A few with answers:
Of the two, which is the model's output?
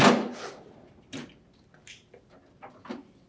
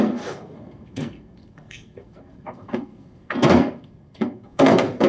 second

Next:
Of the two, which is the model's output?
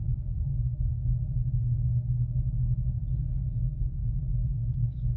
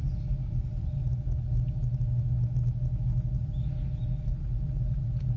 first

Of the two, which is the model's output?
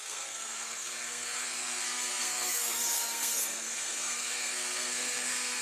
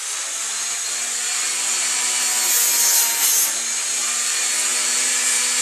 first